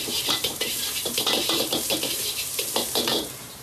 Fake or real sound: fake